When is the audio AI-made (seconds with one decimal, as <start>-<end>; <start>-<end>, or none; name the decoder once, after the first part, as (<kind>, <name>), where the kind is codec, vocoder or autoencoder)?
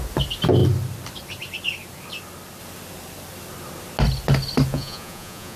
4.7-5.6 (vocoder, Vocos)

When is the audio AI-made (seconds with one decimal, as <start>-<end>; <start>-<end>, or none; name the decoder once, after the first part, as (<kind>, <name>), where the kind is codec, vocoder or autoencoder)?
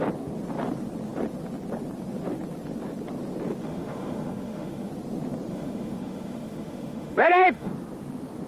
3.6-4.9 (autoencoder, DAC-VAE); 5.5-7.7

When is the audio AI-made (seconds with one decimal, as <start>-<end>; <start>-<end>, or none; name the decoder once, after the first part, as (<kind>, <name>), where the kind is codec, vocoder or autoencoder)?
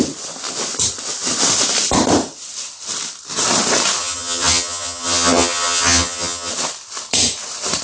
4.0-6.5 (vocoder, HiFi-GAN)